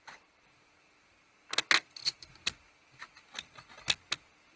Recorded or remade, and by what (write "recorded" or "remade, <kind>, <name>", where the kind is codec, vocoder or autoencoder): recorded